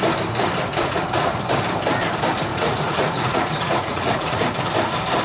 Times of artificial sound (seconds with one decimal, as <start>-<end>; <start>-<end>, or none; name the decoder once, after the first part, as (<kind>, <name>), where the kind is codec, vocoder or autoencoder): 0.7-1.3 (vocoder, Vocos); 2.5-4.4